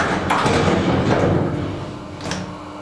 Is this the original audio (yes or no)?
yes